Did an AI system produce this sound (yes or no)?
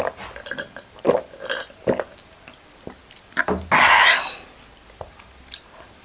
no